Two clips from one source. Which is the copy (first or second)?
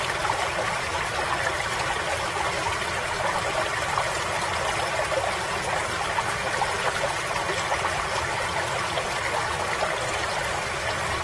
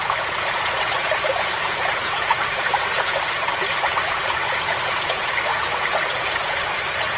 second